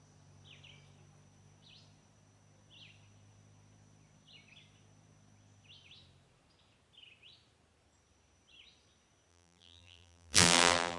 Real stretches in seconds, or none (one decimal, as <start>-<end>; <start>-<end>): 0.0-9.3

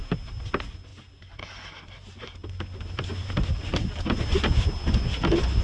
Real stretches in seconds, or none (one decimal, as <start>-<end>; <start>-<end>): 0.0-5.6